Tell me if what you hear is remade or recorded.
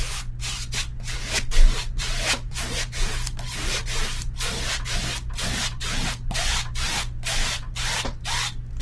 recorded